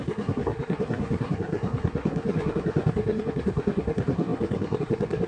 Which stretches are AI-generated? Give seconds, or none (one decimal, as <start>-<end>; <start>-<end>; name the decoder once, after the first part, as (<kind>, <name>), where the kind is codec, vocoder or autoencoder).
0.0-5.3 (codec, SNAC)

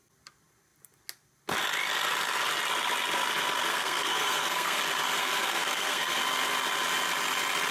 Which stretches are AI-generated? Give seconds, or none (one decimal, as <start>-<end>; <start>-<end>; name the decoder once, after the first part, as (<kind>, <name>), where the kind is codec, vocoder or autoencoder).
3.7-4.8 (codec, SNAC); 5.2-6.2

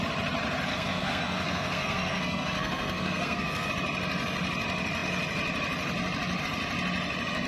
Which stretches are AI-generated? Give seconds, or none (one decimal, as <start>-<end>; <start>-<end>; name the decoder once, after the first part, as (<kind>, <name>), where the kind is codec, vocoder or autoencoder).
0.7-3.7 (codec, SNAC)

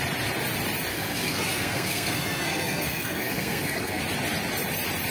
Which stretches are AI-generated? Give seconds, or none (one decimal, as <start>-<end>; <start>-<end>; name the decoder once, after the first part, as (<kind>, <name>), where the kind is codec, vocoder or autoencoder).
0.9-4.0 (codec, SNAC)

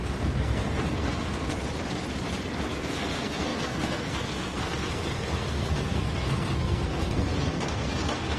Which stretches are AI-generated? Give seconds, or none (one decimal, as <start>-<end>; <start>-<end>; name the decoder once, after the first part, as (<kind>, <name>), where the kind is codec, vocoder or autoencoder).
0.0-1.6 (codec, SNAC); 2.7-8.4

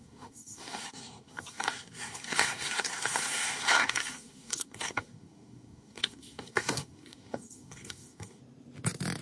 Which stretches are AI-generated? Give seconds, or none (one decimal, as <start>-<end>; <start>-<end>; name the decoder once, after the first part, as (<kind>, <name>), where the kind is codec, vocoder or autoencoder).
0.0-8.4 (codec, SNAC)

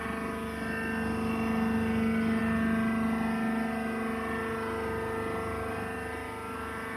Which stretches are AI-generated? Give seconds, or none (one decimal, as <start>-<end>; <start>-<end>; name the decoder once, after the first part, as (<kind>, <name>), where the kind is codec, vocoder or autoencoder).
none